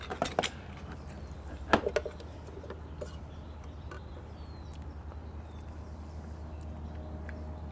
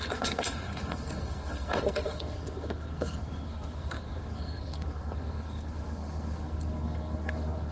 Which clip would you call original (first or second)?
first